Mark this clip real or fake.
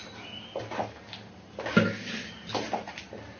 real